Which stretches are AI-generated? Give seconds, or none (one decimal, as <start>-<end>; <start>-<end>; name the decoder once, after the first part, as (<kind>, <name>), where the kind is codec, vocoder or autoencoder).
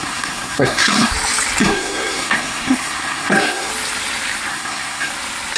0.0-1.1 (codec, SNAC); 1.6-3.7; 4.5-5.1